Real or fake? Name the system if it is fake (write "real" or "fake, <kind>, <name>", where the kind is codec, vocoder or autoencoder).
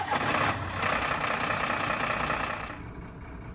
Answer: real